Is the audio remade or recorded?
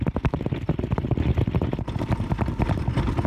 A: recorded